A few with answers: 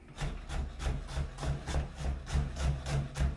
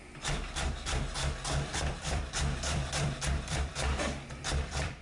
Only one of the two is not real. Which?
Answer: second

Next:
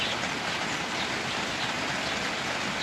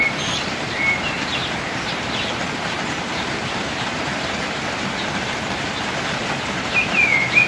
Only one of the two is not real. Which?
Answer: second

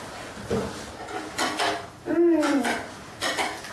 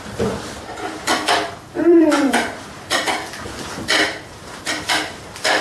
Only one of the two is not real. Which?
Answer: second